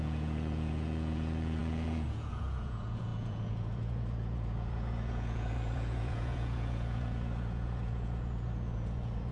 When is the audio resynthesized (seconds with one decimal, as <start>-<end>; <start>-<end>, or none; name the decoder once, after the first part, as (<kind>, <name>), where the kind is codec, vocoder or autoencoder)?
0.0-9.3 (vocoder, Vocos)